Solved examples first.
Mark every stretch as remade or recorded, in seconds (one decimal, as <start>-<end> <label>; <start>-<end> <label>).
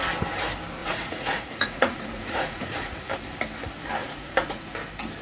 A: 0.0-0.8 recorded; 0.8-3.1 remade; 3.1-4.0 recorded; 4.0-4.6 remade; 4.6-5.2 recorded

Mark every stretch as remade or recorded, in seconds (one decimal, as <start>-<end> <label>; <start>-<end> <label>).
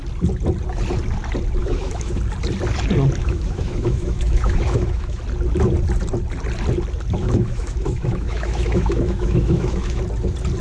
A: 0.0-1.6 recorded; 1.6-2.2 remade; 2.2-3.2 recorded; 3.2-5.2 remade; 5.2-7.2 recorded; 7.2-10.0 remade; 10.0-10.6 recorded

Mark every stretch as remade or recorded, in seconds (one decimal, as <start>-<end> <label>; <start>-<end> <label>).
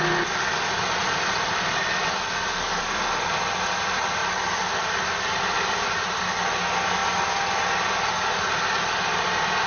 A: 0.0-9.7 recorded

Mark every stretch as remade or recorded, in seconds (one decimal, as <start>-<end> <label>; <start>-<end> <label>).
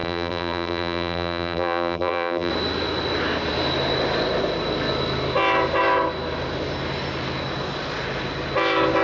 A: 0.0-2.5 remade; 2.5-9.0 recorded